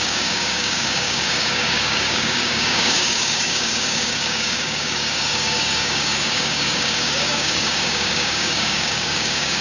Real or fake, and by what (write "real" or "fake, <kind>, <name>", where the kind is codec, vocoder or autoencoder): fake, codec, DAC